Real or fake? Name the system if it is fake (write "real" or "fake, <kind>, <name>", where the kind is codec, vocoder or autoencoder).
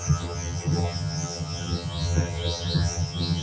fake, vocoder, HiFi-GAN